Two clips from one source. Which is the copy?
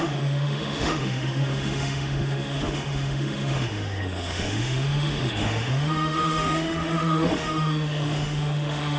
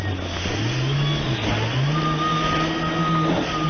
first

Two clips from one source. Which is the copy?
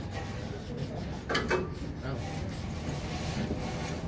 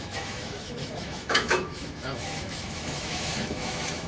second